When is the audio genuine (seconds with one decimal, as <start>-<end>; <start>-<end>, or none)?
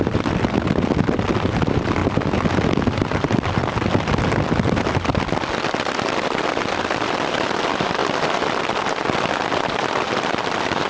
2.0-3.2; 3.6-6.1; 8.0-8.9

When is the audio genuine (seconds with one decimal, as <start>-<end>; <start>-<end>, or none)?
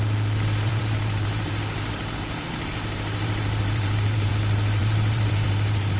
0.0-0.7; 4.3-4.8